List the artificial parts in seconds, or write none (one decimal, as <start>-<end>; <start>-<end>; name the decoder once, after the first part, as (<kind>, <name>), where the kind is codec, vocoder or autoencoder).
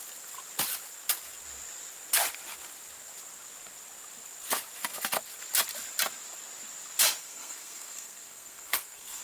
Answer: 7.2-9.2 (codec, SNAC)